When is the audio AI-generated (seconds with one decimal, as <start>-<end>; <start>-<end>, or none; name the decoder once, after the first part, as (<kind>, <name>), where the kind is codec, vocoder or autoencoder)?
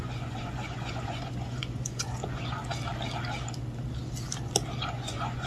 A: 0.0-2.6 (vocoder, Vocos); 4.8-5.5